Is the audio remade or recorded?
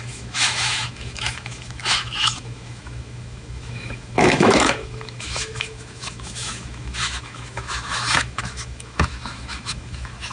remade